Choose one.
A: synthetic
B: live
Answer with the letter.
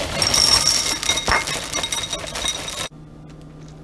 B